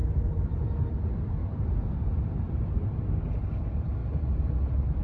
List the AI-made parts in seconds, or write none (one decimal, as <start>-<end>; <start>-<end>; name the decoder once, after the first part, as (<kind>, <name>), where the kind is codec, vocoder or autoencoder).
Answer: 1.4-3.0 (vocoder, BigVGAN v2)